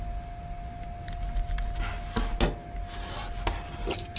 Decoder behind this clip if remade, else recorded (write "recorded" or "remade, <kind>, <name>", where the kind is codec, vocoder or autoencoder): recorded